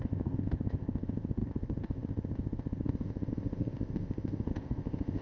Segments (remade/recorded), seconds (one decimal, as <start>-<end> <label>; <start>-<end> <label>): 0.0-5.2 remade